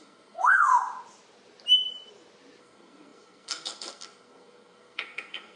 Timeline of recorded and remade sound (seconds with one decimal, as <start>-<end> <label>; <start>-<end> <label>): 0.0-0.7 remade; 0.7-2.6 recorded; 2.6-5.6 remade